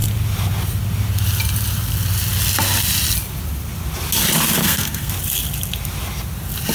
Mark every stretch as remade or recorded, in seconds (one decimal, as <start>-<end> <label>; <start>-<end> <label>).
0.0-4.6 recorded; 4.6-5.1 remade; 5.1-6.7 recorded